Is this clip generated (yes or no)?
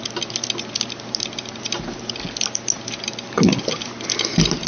no